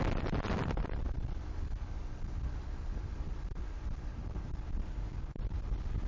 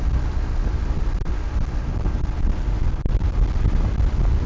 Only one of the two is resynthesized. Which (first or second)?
first